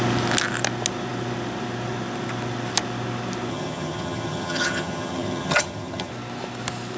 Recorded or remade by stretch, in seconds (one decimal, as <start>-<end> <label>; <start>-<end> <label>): 0.0-3.5 recorded; 3.5-6.1 remade; 6.1-7.0 recorded